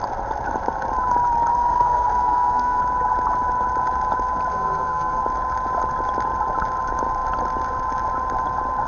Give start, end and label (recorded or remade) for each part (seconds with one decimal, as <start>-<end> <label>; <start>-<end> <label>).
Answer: 0.0-1.5 recorded; 1.5-2.8 remade; 2.8-4.5 recorded; 4.5-5.2 remade; 5.2-8.9 recorded